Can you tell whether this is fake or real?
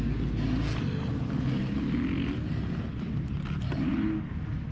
real